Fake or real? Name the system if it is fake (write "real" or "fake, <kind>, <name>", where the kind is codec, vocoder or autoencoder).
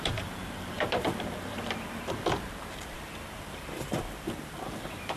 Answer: fake, vocoder, BigVGAN v2